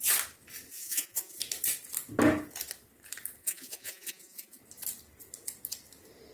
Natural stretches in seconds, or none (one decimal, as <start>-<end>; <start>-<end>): 0.0-0.7; 1.4-3.4; 4.6-6.3